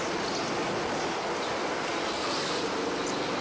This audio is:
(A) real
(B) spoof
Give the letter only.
A